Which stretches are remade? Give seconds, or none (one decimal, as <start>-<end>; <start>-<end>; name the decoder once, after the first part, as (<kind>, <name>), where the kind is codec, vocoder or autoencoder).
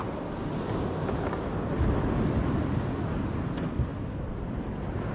none